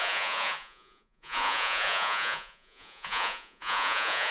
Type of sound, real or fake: fake